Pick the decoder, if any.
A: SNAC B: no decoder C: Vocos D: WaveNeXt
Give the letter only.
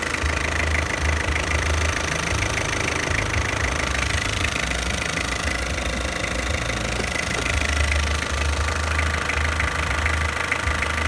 B